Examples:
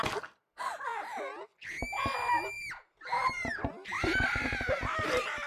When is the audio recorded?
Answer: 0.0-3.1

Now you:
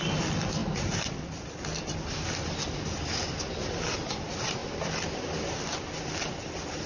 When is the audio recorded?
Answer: 0.0-0.6; 1.1-6.9

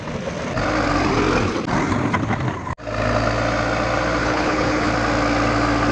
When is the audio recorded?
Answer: 0.0-4.2; 4.9-5.9

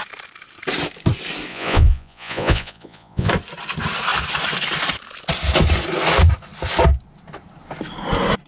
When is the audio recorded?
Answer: 0.0-1.5; 3.3-8.5

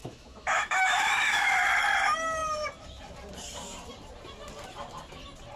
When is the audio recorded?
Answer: 1.5-5.6